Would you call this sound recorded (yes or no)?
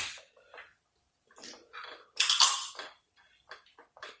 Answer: yes